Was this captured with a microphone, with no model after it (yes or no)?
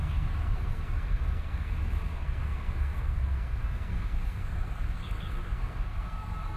no